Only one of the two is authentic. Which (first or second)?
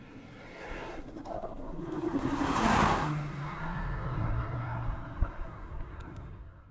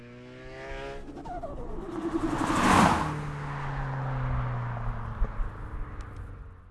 second